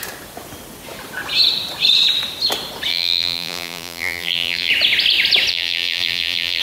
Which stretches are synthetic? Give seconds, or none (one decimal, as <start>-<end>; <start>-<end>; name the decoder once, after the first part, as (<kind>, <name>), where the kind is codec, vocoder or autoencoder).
2.9-4.7 (vocoder, BigVGAN v2); 5.5-6.6